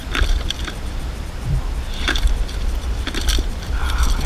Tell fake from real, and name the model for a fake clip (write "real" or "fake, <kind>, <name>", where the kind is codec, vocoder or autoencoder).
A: fake, vocoder, BigVGAN v2